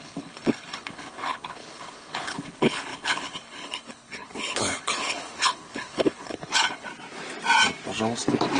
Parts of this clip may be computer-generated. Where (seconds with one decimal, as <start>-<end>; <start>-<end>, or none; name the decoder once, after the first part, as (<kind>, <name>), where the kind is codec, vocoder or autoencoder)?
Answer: 0.0-6.9 (codec, HILCodec)